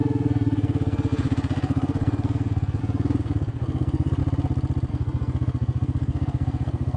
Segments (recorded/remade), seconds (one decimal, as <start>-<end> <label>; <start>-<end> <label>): 0.0-4.2 remade; 4.2-4.9 recorded; 4.9-7.0 remade

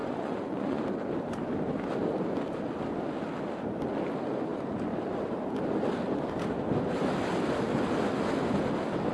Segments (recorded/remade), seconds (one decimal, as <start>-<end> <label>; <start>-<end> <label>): 0.0-0.8 remade; 0.8-9.1 recorded

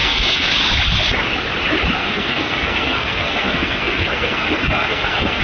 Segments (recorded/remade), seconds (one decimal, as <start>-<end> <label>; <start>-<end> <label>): 0.0-0.5 remade; 0.5-2.0 recorded; 2.0-5.4 remade

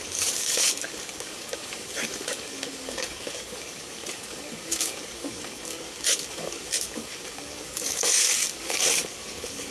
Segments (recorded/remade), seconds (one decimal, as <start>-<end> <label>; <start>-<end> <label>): 0.0-9.7 remade

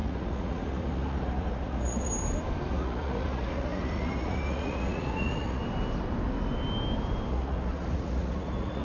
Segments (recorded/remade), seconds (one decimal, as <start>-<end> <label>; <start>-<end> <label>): 0.0-2.1 remade; 2.1-2.7 recorded; 2.7-5.6 remade; 5.6-7.3 recorded; 7.3-8.8 remade

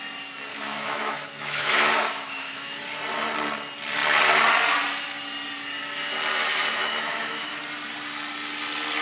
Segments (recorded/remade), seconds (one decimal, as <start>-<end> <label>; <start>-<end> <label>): 0.0-0.5 recorded; 0.5-2.8 remade; 2.8-6.8 recorded; 6.8-7.6 remade; 7.6-9.0 recorded

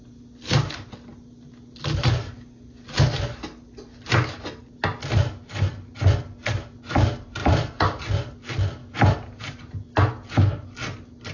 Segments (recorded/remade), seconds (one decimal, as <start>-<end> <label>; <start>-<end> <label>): 0.0-11.3 recorded